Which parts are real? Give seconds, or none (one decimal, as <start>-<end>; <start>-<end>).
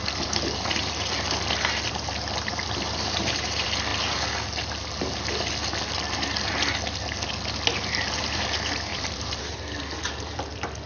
3.9-8.2